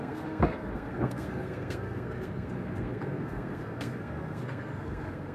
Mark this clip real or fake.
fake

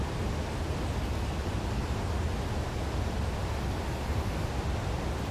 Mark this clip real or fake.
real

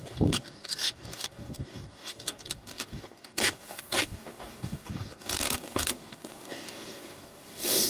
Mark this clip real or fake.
fake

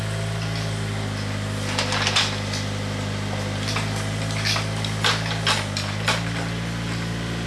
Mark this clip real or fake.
real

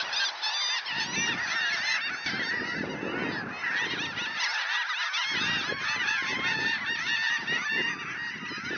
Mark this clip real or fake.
real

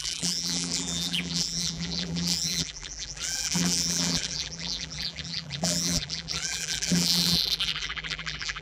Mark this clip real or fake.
fake